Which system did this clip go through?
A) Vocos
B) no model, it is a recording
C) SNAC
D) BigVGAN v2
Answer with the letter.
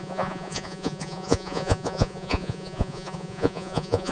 A